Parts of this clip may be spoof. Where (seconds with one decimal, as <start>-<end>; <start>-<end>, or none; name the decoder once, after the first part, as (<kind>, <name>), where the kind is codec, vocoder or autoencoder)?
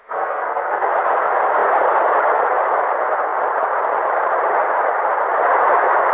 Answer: 0.0-0.9 (codec, SNAC)